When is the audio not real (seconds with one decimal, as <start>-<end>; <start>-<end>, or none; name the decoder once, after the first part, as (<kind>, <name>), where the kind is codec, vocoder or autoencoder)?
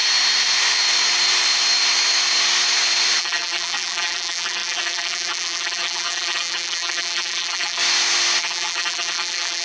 3.2-7.8 (vocoder, BigVGAN v2); 8.4-9.6